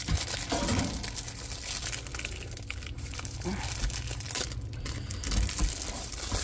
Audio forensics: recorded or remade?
recorded